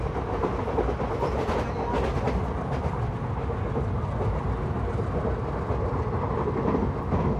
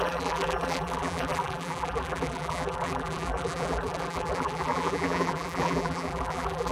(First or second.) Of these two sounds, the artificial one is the second